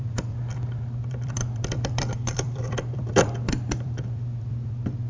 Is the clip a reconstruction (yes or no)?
yes